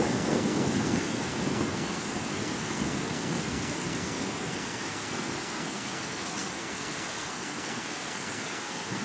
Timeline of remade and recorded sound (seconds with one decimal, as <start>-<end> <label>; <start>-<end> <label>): 0.0-9.0 remade